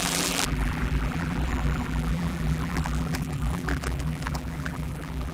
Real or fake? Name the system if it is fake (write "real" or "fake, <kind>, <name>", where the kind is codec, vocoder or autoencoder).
fake, vocoder, BigVGAN v2